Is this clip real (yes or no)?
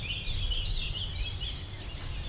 yes